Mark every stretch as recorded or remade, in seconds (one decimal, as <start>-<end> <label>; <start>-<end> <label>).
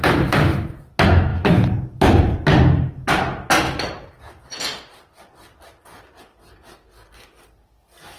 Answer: 0.0-8.2 recorded